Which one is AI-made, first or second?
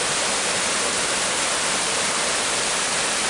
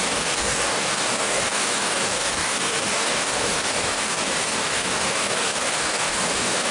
second